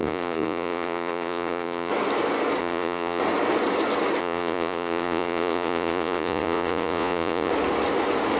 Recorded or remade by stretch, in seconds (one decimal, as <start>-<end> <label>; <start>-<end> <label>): 0.0-1.9 remade; 1.9-2.6 recorded; 2.6-3.2 remade; 3.2-4.2 recorded; 4.2-7.5 remade; 7.5-8.4 recorded